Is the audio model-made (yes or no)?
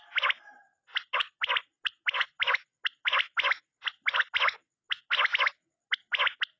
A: no